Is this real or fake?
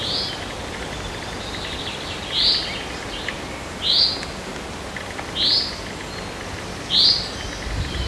real